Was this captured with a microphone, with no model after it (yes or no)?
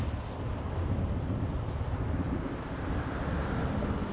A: yes